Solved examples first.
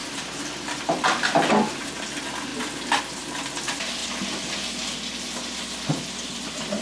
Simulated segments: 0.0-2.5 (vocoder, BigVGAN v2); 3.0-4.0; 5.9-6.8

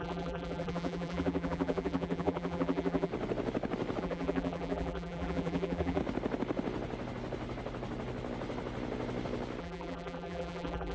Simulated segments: 0.0-3.1 (vocoder, BigVGAN v2); 4.0-6.0; 9.6-10.9

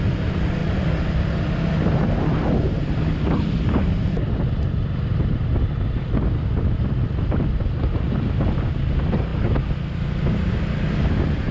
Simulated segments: none

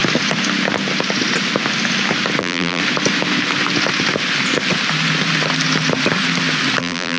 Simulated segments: 2.4-2.8 (vocoder, BigVGAN v2); 6.8-7.2

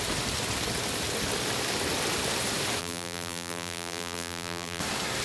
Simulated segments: 2.8-4.8 (vocoder, BigVGAN v2)